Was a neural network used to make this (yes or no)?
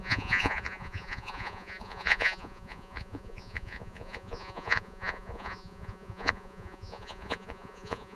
yes